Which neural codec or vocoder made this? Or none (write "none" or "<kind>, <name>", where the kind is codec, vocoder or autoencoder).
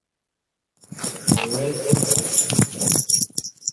none